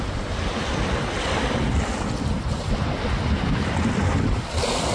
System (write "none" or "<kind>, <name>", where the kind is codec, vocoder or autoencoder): none